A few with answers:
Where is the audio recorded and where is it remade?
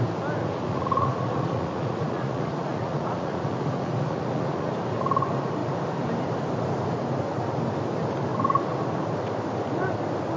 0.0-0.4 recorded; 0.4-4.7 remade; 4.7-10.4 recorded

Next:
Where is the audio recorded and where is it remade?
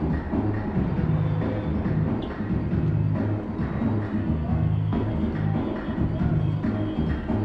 0.0-4.2 recorded; 4.2-5.1 remade; 5.1-7.4 recorded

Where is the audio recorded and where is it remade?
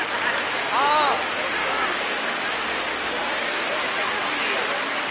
0.0-1.6 recorded; 1.6-2.4 remade; 2.4-2.9 recorded; 2.9-3.5 remade; 3.5-5.1 recorded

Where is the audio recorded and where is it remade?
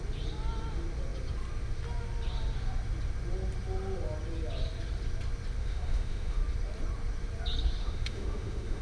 0.0-5.6 recorded; 5.6-6.4 remade; 6.4-7.8 recorded; 7.8-8.8 remade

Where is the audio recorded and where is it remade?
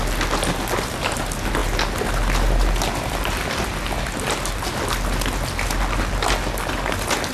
0.0-7.3 recorded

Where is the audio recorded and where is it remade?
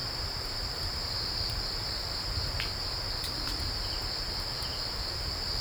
0.0-1.0 remade; 1.0-5.6 recorded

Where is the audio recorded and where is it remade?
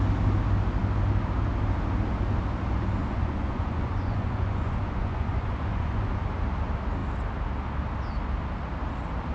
0.0-3.0 recorded; 3.0-6.1 remade; 6.1-9.3 recorded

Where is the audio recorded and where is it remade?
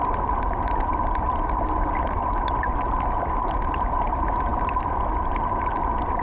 0.0-6.2 recorded